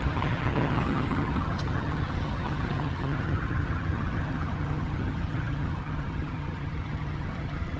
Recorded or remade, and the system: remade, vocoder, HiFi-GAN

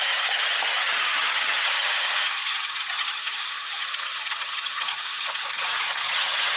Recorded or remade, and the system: remade, vocoder, HiFi-GAN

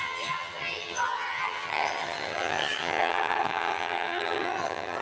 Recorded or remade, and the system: remade, vocoder, HiFi-GAN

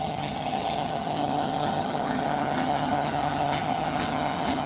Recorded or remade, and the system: remade, vocoder, HiFi-GAN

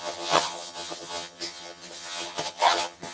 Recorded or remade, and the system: remade, vocoder, HiFi-GAN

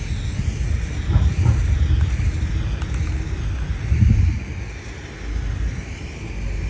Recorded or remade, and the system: recorded